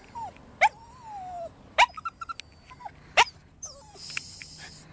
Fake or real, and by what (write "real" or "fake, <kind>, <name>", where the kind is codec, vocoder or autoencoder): real